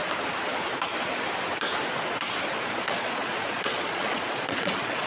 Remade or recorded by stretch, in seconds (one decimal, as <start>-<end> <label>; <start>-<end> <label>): 0.0-2.5 recorded; 2.5-5.1 remade